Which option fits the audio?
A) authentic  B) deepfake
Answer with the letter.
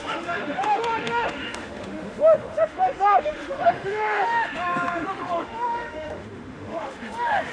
B